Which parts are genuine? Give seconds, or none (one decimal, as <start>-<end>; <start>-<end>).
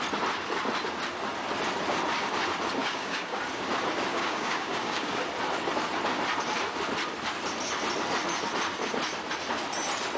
0.0-2.8; 3.4-4.1; 5.2-10.2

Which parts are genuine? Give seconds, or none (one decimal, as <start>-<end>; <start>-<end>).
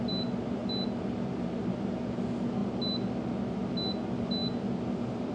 0.0-5.3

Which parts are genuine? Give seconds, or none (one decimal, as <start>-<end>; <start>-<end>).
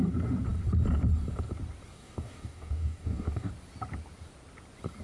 0.0-1.9; 3.5-5.0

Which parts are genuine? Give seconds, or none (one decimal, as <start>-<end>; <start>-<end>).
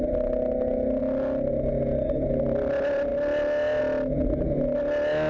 0.0-5.3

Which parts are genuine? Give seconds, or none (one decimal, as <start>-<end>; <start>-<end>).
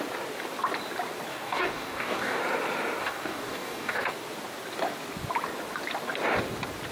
0.0-1.3; 2.4-3.0; 4.1-6.9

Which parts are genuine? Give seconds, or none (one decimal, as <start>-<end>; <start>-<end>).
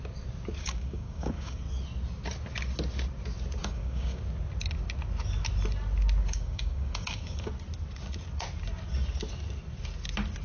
0.0-0.6; 1.6-3.6; 4.2-6.2; 7.5-10.4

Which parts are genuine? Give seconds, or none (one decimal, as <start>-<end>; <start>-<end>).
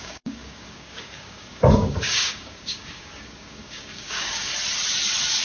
4.5-5.4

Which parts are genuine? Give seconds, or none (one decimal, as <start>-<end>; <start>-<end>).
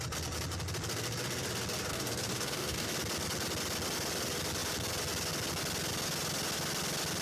0.0-1.9; 2.9-7.2